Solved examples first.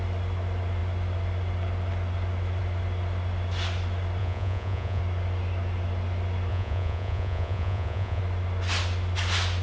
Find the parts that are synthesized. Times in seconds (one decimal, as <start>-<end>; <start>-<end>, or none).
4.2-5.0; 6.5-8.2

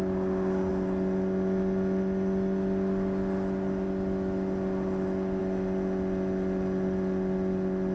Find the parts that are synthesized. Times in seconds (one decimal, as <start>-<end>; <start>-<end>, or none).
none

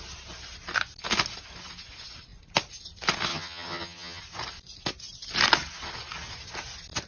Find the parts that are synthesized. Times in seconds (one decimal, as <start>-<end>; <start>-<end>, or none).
3.3-4.2

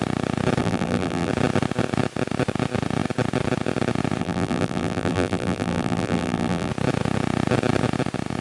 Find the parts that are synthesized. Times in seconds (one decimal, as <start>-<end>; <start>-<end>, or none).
0.6-1.3; 4.2-6.7